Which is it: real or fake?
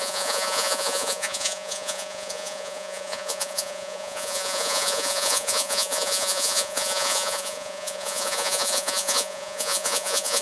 fake